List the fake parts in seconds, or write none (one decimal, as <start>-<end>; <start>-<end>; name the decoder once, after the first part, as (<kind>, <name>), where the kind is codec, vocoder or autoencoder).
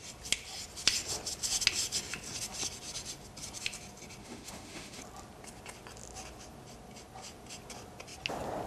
4.2-5.0 (autoencoder, DAC-VAE)